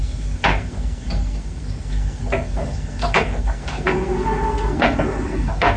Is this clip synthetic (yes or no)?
yes